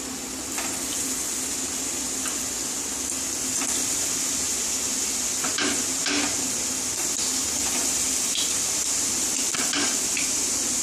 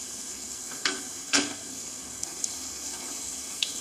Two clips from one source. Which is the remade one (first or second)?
second